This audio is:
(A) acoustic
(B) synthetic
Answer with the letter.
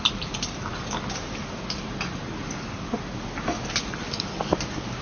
A